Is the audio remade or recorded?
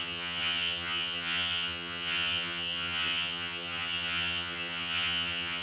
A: remade